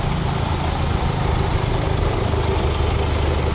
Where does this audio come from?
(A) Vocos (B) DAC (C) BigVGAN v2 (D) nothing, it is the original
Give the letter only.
D